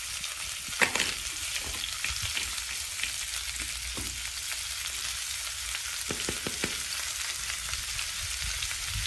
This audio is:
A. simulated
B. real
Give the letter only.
B